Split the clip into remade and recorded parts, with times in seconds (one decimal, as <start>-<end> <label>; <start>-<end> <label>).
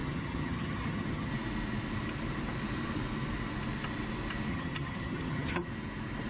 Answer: 0.0-1.3 remade; 1.3-4.5 recorded; 4.5-5.7 remade; 5.7-6.3 recorded